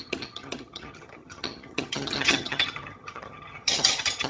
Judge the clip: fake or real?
fake